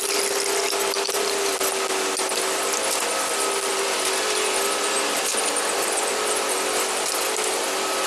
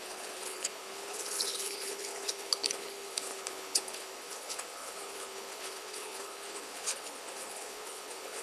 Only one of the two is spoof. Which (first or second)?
second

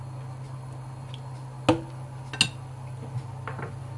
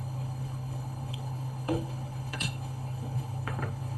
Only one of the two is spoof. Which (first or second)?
second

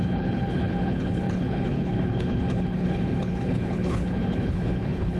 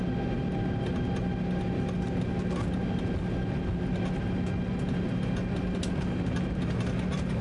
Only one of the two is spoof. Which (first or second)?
first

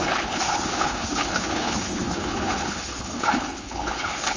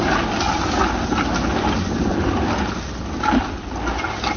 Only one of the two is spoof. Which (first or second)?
first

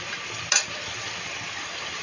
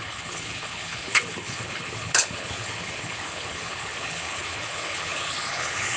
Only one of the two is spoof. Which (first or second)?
second